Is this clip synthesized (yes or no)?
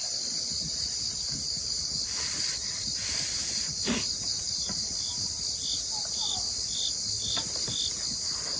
no